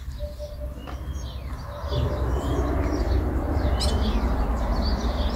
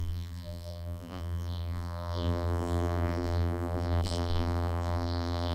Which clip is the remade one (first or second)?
second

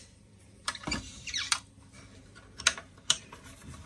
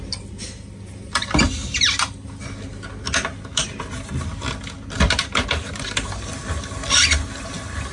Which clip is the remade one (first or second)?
first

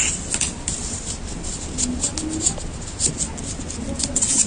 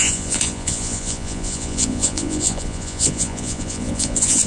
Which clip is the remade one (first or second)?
second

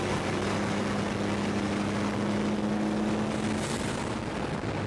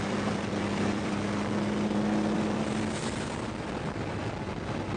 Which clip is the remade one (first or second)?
second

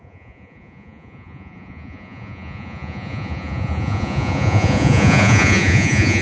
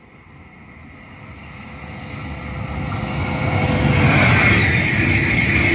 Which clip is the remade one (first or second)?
first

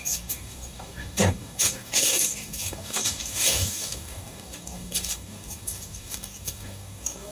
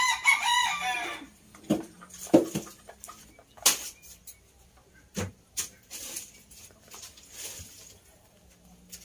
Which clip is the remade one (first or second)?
first